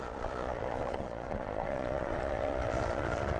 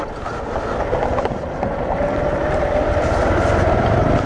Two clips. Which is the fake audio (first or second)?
first